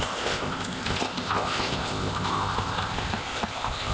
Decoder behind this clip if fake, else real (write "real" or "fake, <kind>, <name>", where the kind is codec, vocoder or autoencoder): fake, codec, ZipCodec